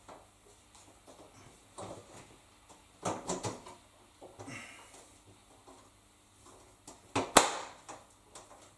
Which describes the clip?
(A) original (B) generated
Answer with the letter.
A